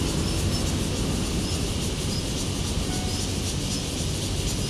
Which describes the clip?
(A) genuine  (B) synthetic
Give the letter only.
A